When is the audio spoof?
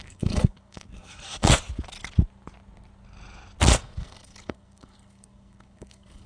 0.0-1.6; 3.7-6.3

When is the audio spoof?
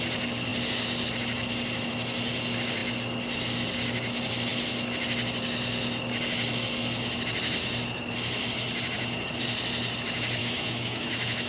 10.4-11.5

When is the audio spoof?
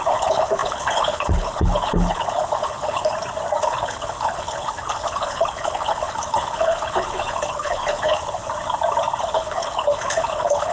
0.0-3.1; 3.6-8.4; 9.2-10.7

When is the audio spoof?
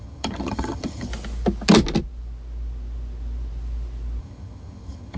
0.0-1.1; 4.2-5.2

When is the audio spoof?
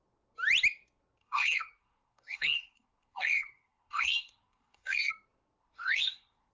1.2-5.1; 5.6-6.5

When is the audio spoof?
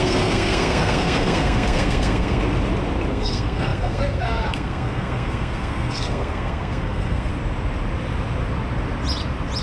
0.0-2.4; 3.1-7.3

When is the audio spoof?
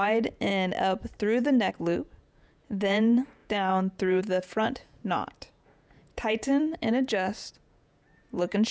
0.0-0.5; 1.7-8.7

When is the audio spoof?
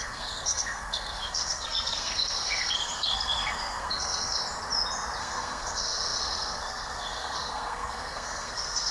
0.0-4.4; 5.2-8.9